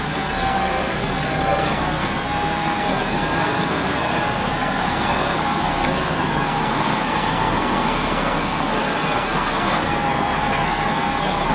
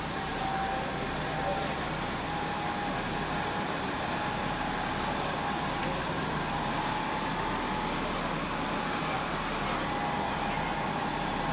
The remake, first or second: first